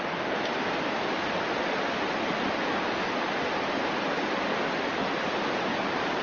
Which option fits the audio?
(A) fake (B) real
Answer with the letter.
B